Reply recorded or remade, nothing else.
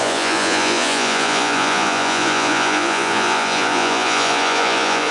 remade